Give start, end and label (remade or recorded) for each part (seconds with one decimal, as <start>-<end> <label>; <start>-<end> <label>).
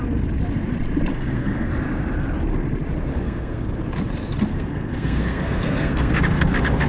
0.0-1.1 recorded; 1.1-1.7 remade; 1.7-3.1 recorded; 3.1-3.8 remade; 3.8-4.5 recorded; 4.5-6.2 remade; 6.2-6.9 recorded